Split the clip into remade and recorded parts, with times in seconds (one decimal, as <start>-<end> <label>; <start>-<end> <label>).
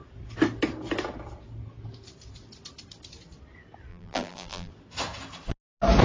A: 0.0-3.9 recorded; 3.9-4.7 remade; 4.7-6.0 recorded